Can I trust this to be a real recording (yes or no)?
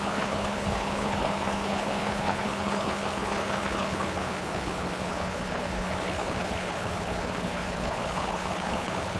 no